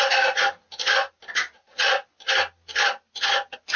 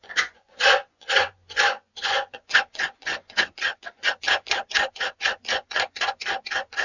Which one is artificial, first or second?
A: second